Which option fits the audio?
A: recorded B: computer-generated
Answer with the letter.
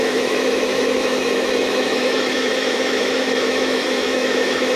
B